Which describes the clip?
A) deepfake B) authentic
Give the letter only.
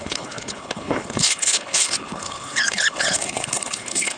A